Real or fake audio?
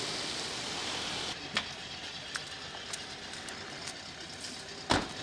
real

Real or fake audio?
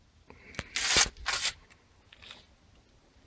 real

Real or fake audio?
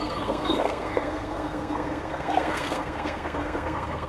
fake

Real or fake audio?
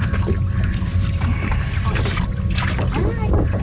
real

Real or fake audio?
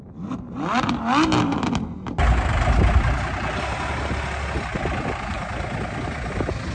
real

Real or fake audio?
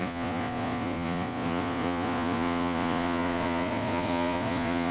fake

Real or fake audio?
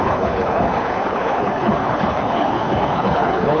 fake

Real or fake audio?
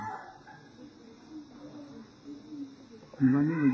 real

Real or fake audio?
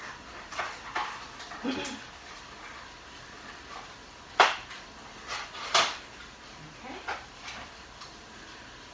real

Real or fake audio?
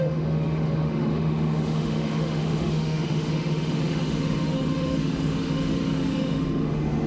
fake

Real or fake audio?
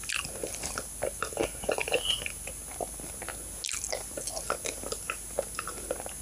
real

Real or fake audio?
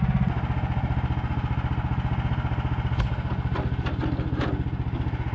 real